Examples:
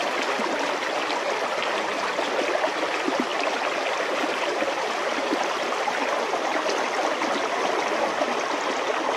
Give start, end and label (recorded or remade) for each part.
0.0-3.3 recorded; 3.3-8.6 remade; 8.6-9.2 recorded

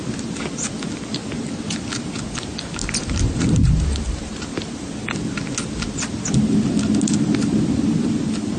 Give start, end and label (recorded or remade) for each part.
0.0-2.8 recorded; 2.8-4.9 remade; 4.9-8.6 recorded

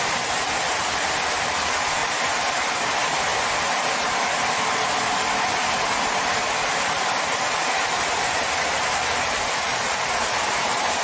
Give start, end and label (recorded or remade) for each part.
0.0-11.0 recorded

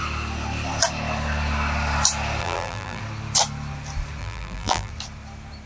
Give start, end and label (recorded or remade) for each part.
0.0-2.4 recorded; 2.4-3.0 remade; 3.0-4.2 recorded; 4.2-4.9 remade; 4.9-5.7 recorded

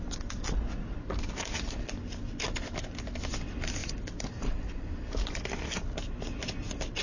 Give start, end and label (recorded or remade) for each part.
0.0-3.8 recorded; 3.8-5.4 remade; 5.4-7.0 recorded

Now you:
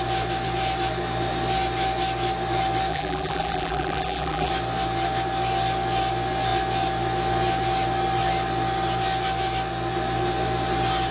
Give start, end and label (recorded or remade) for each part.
0.0-2.9 recorded; 2.9-4.5 remade; 4.5-11.1 recorded